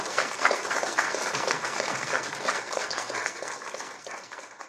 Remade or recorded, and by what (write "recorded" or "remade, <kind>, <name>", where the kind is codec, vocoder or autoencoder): remade, codec, SNAC